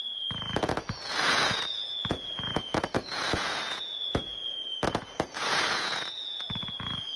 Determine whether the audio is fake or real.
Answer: fake